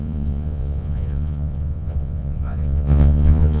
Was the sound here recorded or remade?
remade